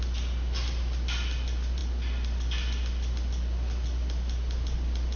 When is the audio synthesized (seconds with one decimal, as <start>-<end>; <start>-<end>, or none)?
none